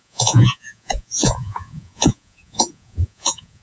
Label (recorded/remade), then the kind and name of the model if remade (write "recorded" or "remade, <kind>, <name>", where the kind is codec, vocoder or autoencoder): remade, vocoder, Vocos